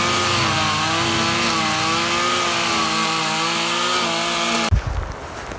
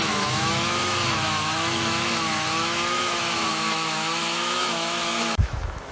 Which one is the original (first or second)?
first